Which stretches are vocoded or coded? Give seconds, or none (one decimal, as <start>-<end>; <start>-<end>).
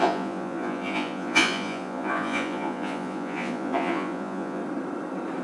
0.0-4.6